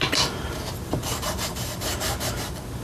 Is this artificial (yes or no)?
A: yes